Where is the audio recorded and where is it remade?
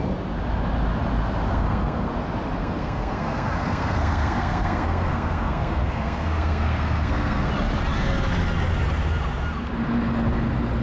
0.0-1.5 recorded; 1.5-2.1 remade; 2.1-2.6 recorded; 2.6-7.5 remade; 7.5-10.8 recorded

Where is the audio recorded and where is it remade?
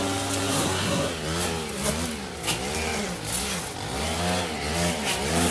0.0-0.5 recorded; 0.5-1.1 remade; 1.1-5.5 recorded